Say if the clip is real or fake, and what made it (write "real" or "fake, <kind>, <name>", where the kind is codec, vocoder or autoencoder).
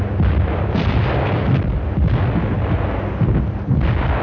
real